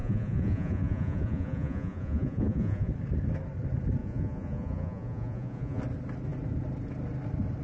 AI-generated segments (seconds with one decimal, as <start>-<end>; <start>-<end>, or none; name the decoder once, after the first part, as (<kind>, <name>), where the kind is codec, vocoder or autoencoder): 0.0-2.9 (vocoder, Vocos); 4.0-5.8